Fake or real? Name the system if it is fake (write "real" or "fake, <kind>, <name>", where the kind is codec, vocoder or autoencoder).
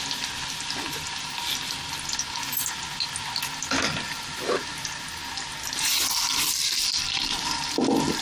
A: real